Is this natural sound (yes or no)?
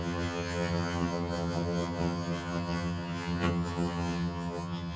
no